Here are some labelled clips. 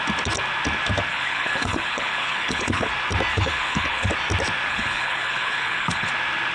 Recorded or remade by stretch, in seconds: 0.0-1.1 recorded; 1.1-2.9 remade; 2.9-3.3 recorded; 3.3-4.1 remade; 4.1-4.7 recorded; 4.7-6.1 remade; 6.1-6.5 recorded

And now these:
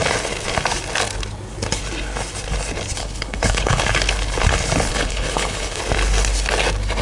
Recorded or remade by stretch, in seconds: 0.0-3.0 recorded; 3.0-3.8 remade; 3.8-4.9 recorded; 4.9-5.8 remade; 5.8-7.0 recorded

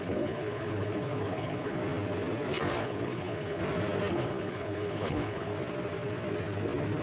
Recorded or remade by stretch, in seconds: 0.0-1.8 remade; 1.8-2.8 recorded; 2.8-3.6 remade; 3.6-4.1 recorded; 4.1-5.5 remade; 5.5-7.0 recorded

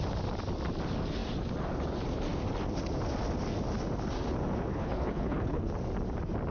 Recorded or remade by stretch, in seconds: 0.0-4.7 recorded; 4.7-5.7 remade; 5.7-6.5 recorded

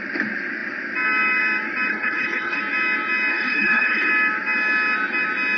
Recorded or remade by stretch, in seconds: 0.0-1.9 recorded; 1.9-2.6 remade; 2.6-3.3 recorded; 3.3-4.1 remade; 4.1-5.6 recorded

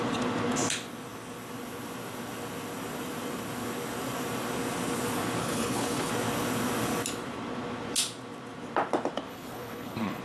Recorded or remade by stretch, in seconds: 0.0-5.4 recorded; 5.4-6.1 remade; 6.1-9.3 recorded; 9.3-10.2 remade

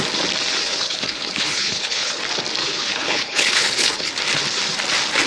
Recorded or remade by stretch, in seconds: 0.0-0.6 recorded; 0.6-2.2 remade; 2.2-2.6 recorded; 2.6-4.1 remade; 4.1-5.3 recorded